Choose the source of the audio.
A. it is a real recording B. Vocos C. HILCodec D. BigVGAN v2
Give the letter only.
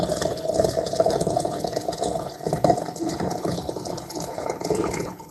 C